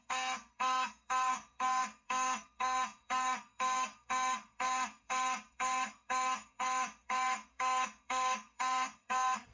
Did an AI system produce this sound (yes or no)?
yes